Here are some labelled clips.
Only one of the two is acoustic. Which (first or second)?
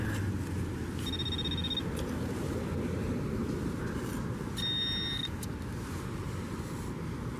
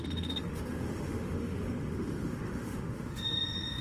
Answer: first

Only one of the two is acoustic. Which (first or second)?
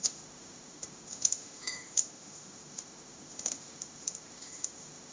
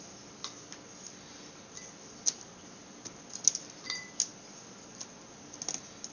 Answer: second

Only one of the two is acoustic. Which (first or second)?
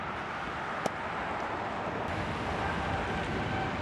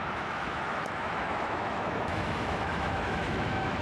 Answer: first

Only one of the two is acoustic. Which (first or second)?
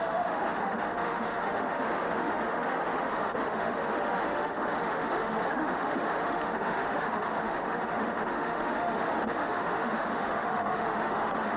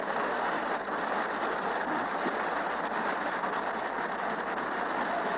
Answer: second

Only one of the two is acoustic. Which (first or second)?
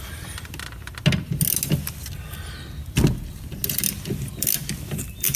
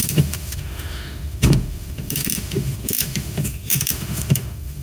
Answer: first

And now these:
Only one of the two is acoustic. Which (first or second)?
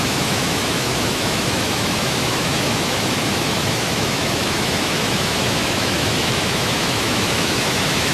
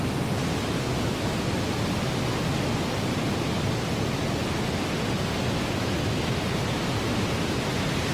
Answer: second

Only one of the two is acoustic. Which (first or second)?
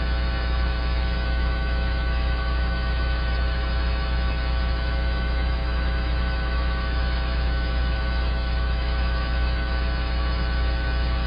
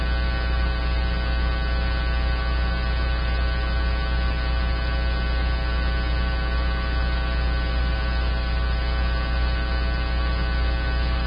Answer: second